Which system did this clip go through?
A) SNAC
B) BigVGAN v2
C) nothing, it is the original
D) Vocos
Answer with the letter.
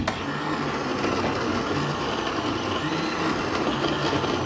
C